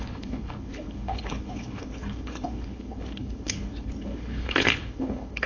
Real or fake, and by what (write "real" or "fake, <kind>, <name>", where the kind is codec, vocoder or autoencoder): fake, codec, HILCodec